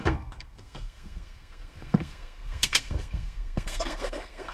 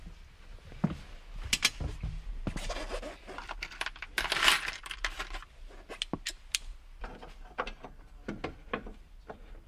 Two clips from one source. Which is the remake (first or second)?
first